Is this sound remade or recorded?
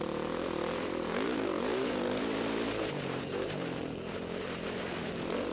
remade